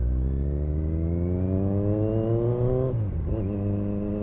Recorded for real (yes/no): yes